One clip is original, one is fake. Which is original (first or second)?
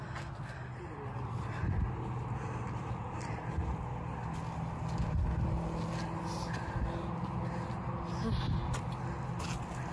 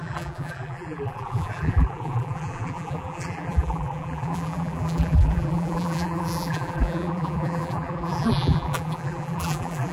first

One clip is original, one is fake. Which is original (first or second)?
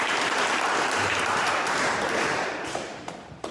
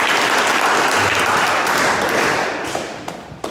second